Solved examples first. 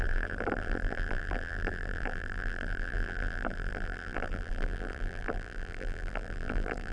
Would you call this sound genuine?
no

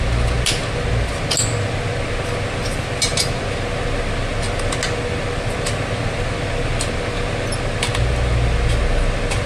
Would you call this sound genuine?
yes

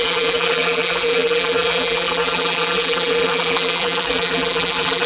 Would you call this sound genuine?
no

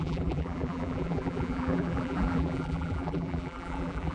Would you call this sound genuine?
no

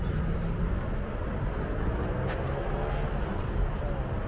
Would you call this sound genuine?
yes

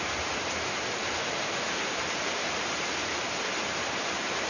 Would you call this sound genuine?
no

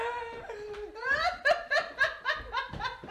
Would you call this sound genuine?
no